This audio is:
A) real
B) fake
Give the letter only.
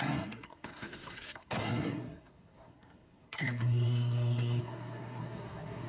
B